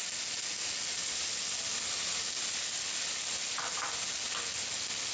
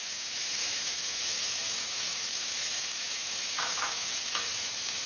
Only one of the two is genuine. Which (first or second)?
first